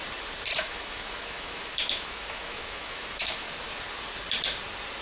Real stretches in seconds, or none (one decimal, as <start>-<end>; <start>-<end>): 0.0-0.5; 3.5-5.0